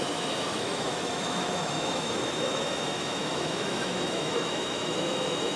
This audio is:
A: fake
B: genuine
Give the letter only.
A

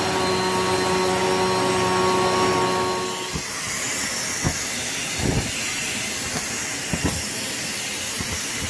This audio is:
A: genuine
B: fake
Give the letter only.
A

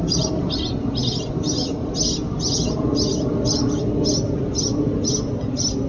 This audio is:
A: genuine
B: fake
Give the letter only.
A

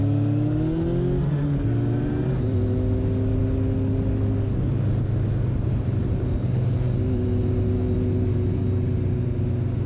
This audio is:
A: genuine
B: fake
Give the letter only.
A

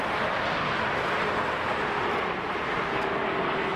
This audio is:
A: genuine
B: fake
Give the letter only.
A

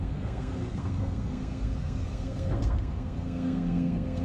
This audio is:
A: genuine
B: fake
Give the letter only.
B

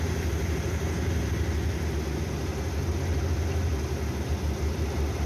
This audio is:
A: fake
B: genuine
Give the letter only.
B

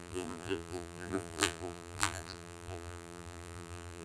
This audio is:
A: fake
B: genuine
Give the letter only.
A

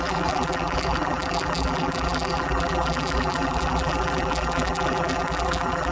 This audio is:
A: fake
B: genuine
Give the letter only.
A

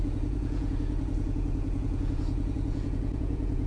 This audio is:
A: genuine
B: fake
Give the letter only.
B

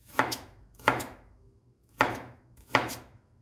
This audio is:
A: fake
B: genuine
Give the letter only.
A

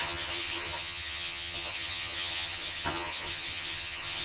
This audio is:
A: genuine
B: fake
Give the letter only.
B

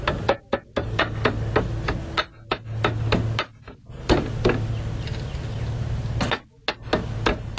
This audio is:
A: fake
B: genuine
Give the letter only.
B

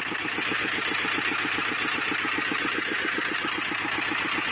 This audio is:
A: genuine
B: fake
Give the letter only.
A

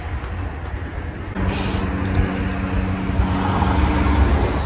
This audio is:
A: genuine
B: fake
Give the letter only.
A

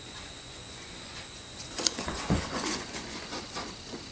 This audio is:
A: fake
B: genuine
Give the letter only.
A